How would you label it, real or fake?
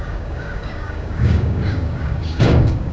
fake